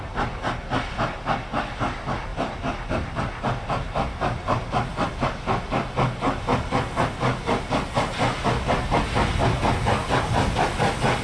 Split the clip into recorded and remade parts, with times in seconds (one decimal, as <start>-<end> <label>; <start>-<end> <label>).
0.0-2.3 recorded; 2.3-5.1 remade; 5.1-11.2 recorded